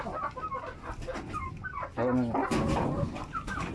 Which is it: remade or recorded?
recorded